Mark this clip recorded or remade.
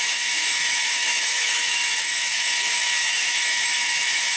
remade